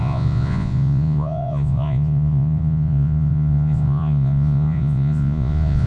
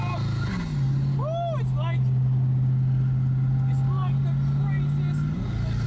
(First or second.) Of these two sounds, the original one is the second